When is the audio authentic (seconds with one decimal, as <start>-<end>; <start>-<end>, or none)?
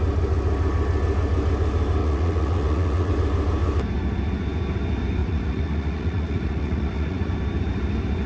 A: 0.0-2.0; 3.1-5.2; 7.3-8.3